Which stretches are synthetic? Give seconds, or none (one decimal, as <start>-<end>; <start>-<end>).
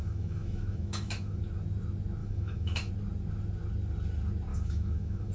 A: 0.0-1.4; 2.2-2.9; 4.5-5.3